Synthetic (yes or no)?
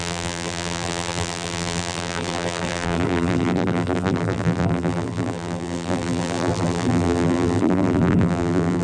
yes